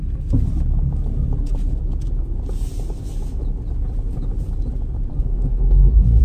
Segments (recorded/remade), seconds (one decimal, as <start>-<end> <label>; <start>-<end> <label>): 0.0-5.1 recorded; 5.1-6.2 remade